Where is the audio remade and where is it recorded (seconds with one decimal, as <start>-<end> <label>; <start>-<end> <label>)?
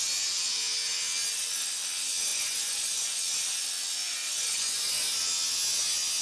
0.0-2.3 recorded; 2.3-3.2 remade; 3.2-4.0 recorded; 4.0-5.2 remade; 5.2-6.2 recorded